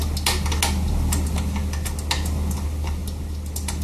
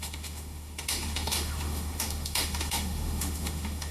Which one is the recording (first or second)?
first